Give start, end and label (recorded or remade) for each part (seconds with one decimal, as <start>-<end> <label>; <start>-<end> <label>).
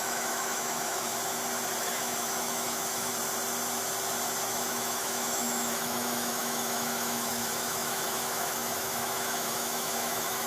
0.0-1.1 remade; 1.1-1.8 recorded; 1.8-3.1 remade; 3.1-4.5 recorded; 4.5-10.5 remade